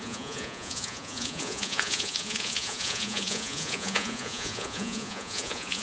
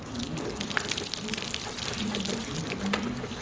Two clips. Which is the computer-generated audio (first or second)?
first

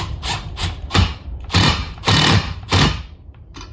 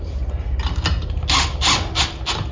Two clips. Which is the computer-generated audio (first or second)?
first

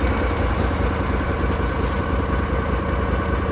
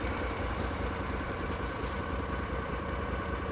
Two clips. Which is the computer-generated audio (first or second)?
second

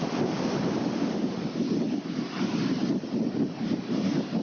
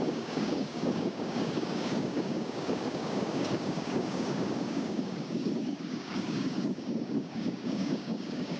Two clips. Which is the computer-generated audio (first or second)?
second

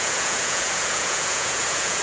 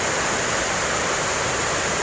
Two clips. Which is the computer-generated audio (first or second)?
first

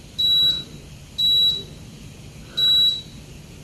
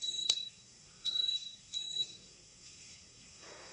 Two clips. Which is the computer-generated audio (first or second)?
second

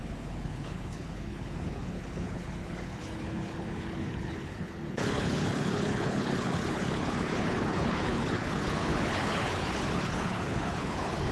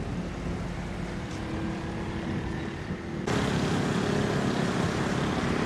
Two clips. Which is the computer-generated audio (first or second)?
first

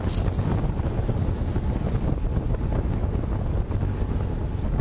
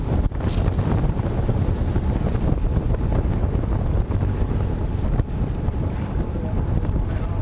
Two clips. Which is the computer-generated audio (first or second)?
second